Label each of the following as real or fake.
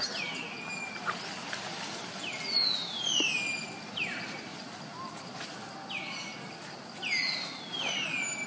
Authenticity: real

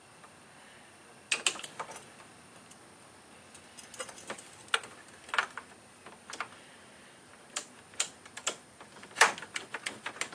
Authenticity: real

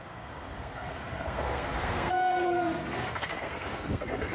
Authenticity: fake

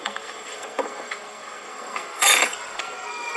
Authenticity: fake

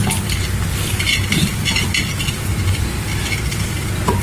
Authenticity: real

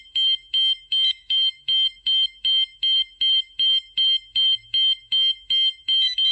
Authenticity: fake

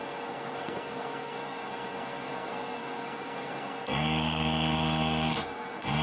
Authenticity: fake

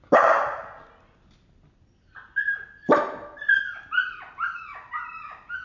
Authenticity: real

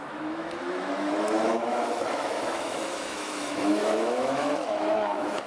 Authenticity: fake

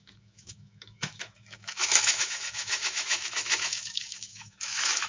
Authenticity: fake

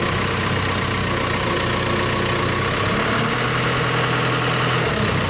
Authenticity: real